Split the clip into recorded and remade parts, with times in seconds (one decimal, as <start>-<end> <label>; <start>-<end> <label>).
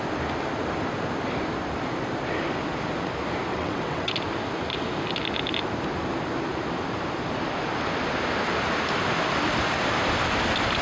0.0-3.5 recorded; 3.5-4.1 remade; 4.1-10.8 recorded